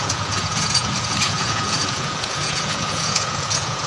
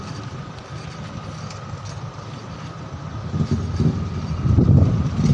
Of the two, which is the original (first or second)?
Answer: second